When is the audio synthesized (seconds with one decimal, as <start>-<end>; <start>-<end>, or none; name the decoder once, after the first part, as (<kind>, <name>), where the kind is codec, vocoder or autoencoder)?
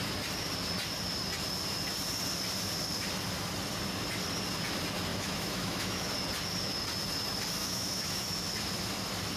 5.1-6.1 (autoencoder, DAC-VAE); 7.6-8.5